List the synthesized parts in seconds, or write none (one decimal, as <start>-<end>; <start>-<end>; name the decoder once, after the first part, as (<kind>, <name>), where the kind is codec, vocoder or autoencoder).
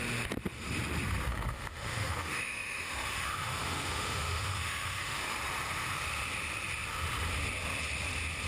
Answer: 1.3-5.3 (autoencoder, DAC-VAE)